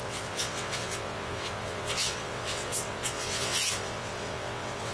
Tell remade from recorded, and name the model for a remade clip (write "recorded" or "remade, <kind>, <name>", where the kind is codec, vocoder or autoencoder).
remade, vocoder, WaveNeXt